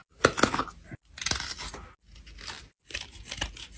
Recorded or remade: recorded